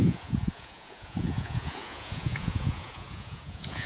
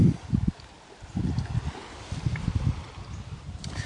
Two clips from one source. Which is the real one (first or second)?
second